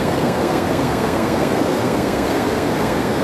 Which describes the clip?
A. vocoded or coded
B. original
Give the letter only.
A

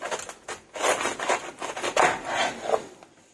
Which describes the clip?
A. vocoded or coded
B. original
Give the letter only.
B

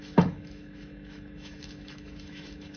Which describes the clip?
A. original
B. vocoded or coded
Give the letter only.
B